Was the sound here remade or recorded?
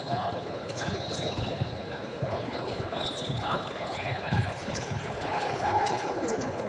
remade